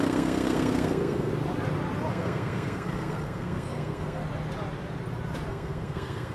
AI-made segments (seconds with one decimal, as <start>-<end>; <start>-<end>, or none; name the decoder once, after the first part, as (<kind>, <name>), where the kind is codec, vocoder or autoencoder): 0.0-1.3 (codec, SNAC); 2.1-4.2; 5.5-6.3